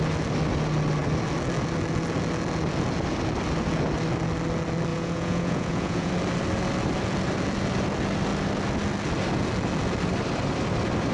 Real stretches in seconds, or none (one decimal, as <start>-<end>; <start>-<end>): 0.0-4.9; 6.1-11.1